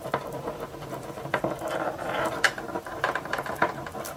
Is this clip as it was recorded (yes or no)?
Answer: no